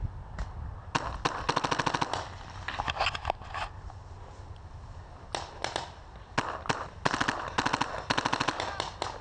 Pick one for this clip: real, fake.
real